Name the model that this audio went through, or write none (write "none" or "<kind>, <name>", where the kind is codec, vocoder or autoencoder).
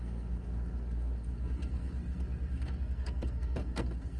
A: codec, SNAC